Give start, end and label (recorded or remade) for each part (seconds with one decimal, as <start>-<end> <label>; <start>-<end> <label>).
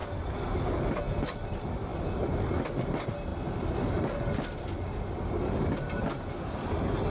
0.0-7.1 recorded